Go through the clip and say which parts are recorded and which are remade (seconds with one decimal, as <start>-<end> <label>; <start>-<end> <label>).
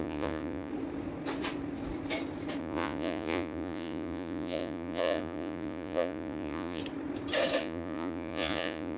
0.0-0.7 remade; 0.7-2.6 recorded; 2.6-6.8 remade; 6.8-7.6 recorded; 7.6-9.0 remade